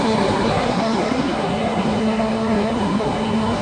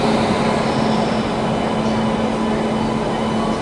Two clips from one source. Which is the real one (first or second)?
second